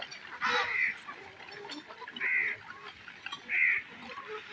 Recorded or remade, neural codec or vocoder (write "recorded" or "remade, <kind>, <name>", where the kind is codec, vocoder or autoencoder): recorded